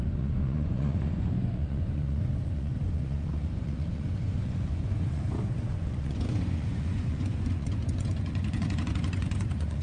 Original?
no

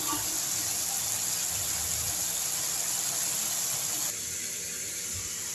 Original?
yes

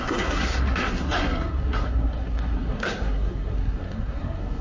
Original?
no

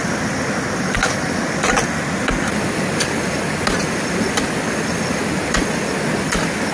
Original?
yes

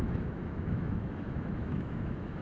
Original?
no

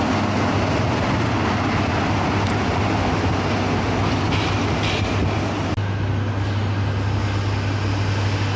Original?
yes